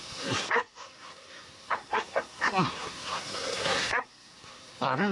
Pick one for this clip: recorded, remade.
remade